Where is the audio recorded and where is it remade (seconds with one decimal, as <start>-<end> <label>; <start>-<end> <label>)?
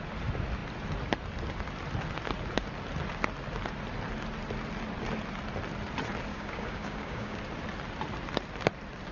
0.0-6.3 recorded; 6.3-7.4 remade; 7.4-9.1 recorded